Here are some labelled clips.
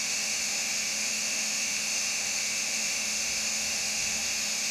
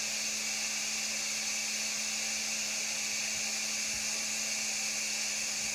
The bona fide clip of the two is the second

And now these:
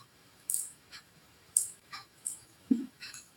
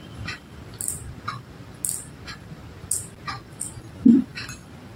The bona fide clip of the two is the second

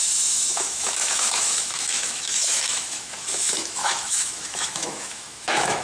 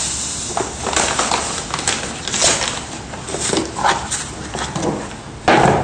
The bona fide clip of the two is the second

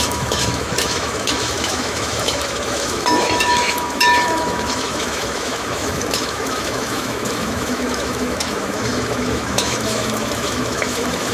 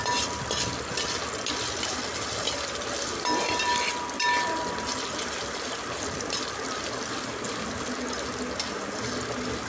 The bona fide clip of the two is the second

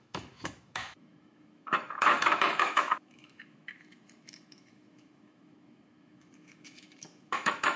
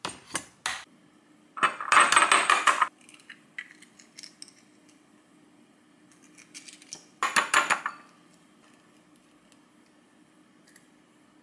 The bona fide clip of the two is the second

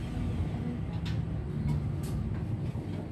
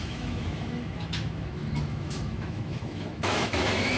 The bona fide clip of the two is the first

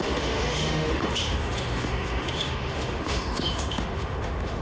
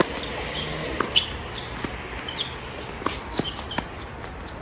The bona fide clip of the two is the second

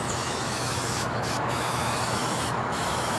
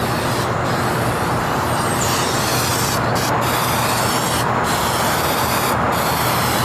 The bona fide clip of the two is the second